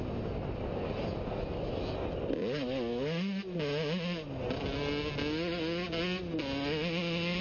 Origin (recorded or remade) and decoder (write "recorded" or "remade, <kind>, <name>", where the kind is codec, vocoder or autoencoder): recorded